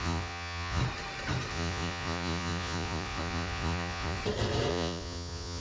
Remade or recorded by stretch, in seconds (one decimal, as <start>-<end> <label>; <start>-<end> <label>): 0.0-0.8 remade; 0.8-1.5 recorded; 1.5-4.2 remade; 4.2-4.7 recorded; 4.7-5.6 remade